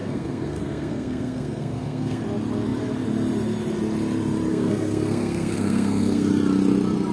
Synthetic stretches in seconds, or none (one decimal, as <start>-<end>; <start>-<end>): 0.0-2.2; 4.5-6.3